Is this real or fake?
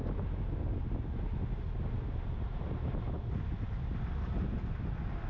real